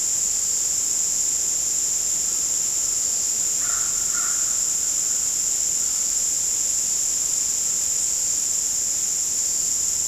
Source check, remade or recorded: recorded